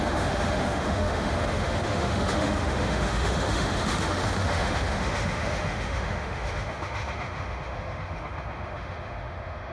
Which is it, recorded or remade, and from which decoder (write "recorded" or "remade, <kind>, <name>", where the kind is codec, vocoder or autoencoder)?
remade, autoencoder, DAC-VAE